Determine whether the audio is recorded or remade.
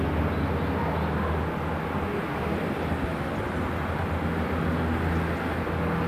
recorded